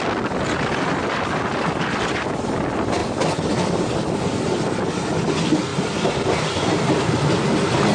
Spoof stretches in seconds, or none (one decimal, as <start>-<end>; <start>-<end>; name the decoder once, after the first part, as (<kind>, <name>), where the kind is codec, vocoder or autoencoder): none

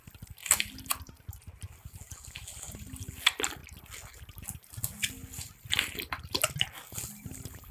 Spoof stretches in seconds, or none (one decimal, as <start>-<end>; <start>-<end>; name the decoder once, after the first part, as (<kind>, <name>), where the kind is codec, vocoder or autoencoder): none

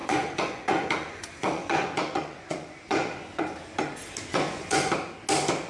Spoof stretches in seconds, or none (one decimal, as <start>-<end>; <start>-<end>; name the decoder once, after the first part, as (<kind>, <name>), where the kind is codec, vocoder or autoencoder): 0.0-3.4 (vocoder, Vocos); 4.3-4.9

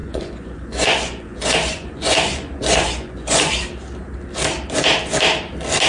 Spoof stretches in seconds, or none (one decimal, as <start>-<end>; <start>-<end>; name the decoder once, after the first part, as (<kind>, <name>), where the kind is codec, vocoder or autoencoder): 0.0-3.5 (vocoder, Vocos)

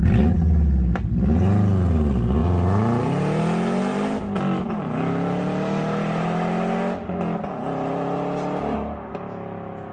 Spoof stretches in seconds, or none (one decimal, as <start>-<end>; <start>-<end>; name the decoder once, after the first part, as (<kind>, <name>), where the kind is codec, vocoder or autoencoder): none

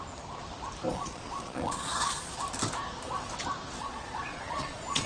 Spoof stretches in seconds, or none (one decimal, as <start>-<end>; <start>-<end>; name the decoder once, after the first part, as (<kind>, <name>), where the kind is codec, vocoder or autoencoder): 0.9-2.3 (vocoder, Vocos); 3.8-5.1